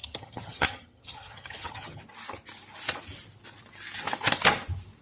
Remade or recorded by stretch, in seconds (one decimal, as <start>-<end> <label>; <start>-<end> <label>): 0.0-2.0 remade; 2.0-5.0 recorded